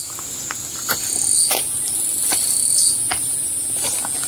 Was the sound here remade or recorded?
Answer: recorded